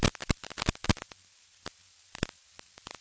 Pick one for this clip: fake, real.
real